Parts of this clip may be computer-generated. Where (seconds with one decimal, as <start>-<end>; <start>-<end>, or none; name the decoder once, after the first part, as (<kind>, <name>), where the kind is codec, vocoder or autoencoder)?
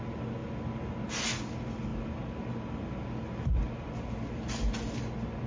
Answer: none